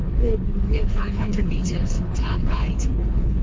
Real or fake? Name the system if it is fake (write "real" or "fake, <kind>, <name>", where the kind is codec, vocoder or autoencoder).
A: fake, codec, HILCodec